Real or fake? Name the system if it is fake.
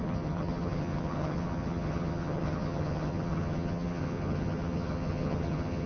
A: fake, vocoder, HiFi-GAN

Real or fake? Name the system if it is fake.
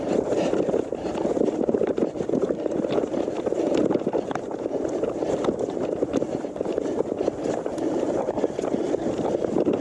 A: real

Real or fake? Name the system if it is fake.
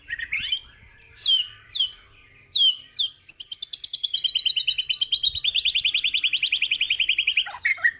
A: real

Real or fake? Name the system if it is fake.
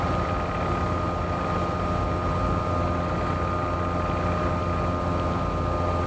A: real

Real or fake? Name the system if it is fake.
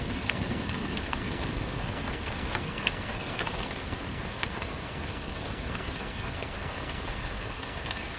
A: fake, codec, SNAC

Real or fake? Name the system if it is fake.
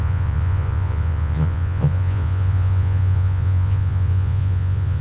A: fake, vocoder, Vocos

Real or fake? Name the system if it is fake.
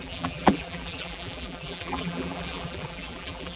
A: fake, vocoder, BigVGAN v2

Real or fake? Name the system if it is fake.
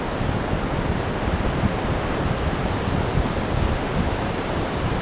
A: real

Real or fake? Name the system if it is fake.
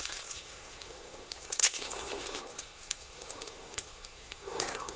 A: fake, codec, SNAC